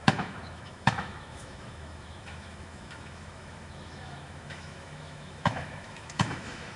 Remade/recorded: remade